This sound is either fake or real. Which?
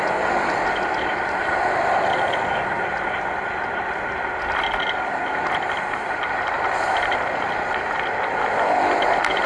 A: real